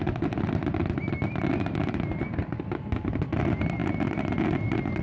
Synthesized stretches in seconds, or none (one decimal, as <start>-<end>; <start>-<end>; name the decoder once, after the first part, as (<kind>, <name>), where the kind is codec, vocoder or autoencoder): none